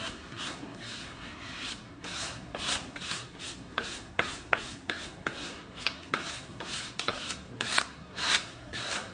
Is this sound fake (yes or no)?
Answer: yes